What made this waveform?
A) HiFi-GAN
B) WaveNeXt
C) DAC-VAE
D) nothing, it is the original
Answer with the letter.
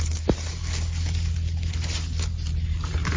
D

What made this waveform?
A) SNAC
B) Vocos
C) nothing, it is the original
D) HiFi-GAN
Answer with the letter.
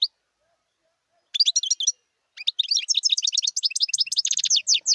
C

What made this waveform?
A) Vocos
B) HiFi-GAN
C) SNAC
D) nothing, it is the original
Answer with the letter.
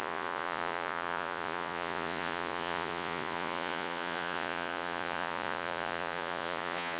A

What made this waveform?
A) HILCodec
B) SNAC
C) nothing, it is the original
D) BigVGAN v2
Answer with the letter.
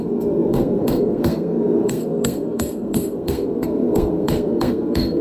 B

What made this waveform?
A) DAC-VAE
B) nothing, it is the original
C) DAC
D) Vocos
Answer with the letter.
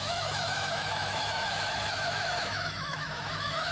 A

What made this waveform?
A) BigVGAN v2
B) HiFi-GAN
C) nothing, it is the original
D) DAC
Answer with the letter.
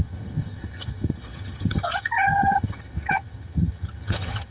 B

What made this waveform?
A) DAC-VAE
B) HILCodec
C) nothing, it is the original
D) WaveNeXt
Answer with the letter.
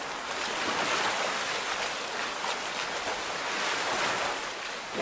C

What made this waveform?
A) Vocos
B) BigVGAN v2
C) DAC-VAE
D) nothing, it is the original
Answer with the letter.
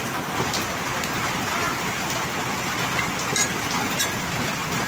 D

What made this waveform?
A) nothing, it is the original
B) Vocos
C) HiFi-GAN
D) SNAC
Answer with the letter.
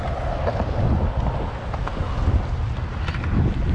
A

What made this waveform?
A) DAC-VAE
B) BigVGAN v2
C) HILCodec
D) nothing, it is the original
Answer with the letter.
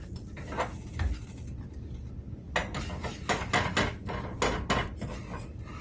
D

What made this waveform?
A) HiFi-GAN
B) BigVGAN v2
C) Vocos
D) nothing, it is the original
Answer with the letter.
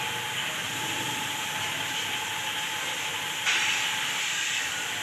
B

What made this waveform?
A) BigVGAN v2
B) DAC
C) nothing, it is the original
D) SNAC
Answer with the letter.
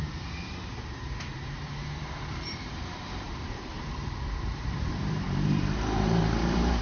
A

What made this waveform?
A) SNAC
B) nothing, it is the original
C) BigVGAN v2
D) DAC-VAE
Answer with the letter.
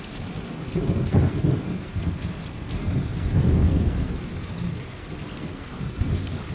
A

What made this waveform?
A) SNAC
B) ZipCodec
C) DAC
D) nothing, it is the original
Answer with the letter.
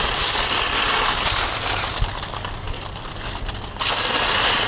D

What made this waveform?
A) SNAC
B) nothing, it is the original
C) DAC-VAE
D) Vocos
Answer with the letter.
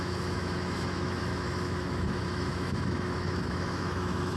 C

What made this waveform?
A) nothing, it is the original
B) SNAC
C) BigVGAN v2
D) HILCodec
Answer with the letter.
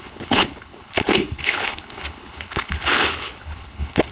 D